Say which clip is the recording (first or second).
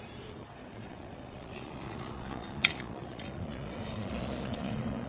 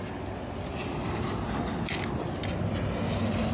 second